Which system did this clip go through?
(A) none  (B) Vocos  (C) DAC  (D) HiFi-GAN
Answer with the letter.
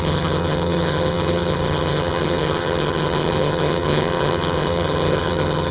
D